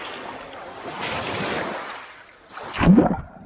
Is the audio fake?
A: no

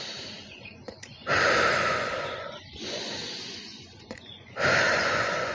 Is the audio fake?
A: yes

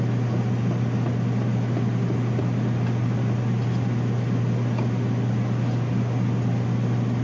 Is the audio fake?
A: no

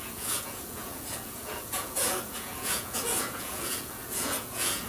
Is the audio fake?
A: yes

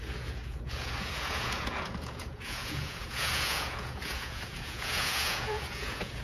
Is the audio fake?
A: yes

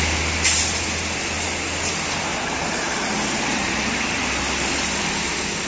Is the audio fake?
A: no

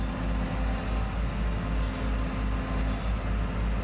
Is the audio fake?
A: no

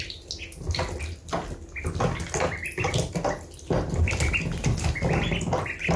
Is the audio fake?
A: no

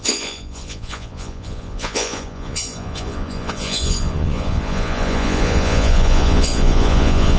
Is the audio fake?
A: yes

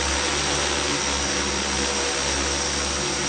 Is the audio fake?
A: no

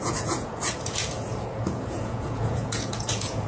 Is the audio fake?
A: yes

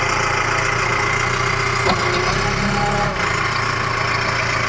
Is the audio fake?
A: no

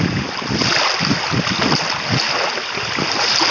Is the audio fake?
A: no